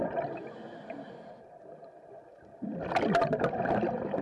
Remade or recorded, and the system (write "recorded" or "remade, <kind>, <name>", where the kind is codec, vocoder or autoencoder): remade, vocoder, BigVGAN v2